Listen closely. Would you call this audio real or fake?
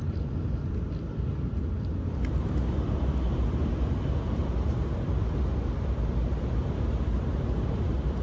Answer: real